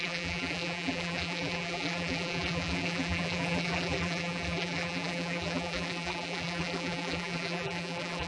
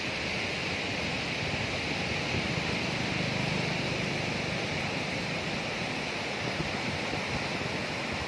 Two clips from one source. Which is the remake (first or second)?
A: first